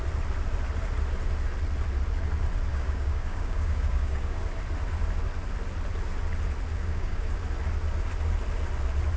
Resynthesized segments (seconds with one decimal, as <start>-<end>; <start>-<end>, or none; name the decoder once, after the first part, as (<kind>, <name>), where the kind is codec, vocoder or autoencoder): 2.7-4.4 (codec, DAC); 6.7-7.4